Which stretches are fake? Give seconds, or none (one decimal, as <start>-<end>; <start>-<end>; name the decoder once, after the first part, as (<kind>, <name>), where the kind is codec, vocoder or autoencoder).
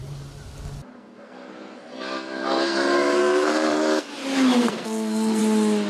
0.9-4.1 (codec, SNAC); 4.6-5.4